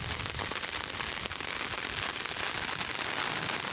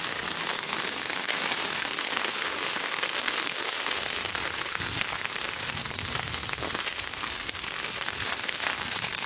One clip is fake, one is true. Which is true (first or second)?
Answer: first